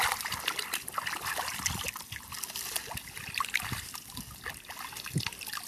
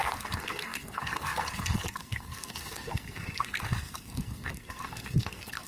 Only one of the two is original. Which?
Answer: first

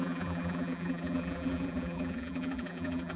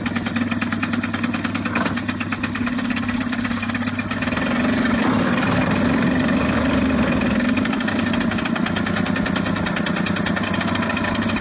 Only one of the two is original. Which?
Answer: second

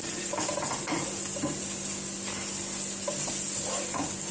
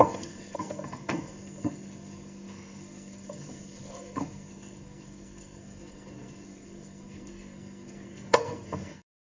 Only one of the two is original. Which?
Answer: first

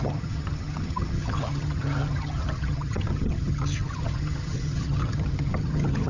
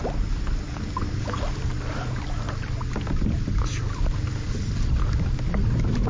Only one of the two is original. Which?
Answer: second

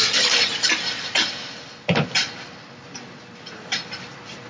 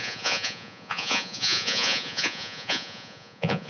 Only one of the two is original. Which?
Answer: first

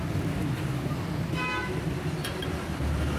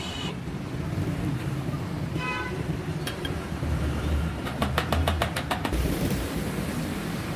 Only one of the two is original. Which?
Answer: first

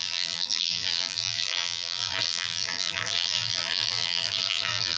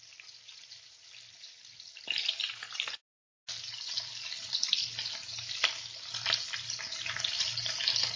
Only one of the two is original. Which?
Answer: second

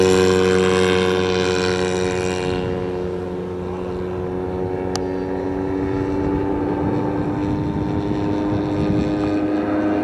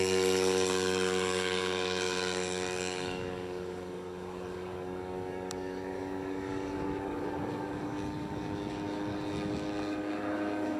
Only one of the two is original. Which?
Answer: first